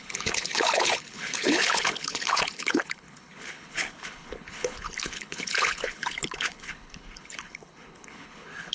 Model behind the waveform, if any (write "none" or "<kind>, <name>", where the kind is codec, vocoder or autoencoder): codec, HILCodec